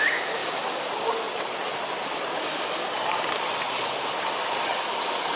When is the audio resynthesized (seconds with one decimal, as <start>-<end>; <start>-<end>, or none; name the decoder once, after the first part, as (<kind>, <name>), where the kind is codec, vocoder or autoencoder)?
none